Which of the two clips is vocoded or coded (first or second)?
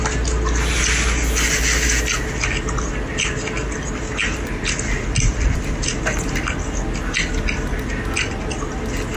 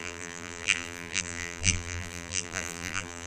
second